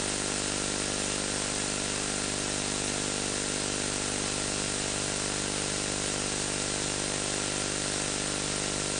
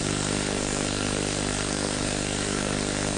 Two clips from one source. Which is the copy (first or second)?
second